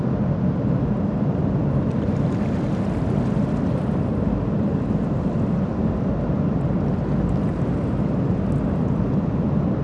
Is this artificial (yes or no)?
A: no